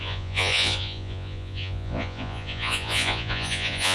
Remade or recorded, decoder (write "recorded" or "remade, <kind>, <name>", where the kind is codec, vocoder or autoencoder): remade, vocoder, Vocos